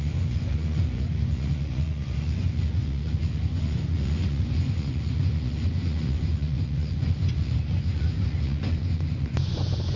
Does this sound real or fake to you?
fake